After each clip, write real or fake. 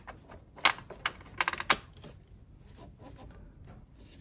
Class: real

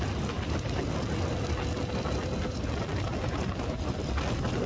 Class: real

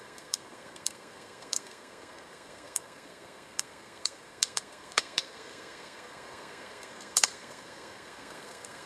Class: fake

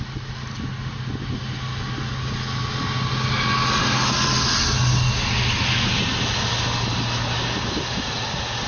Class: real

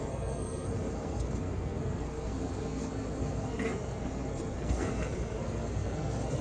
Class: fake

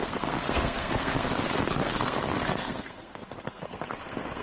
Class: fake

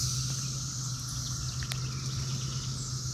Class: real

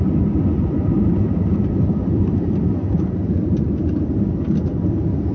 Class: real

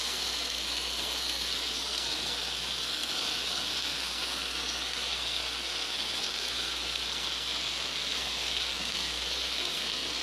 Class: fake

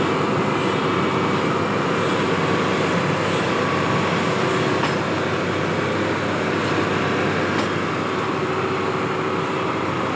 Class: real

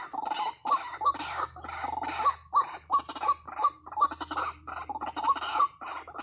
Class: real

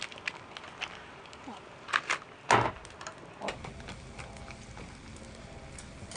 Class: real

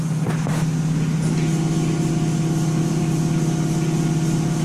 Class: real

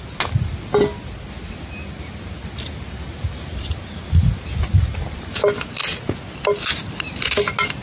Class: real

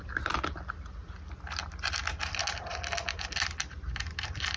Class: real